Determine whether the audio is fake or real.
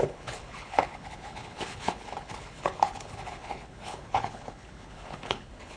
fake